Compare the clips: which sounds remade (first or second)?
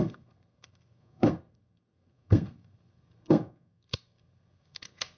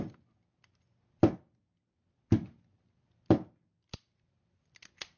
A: first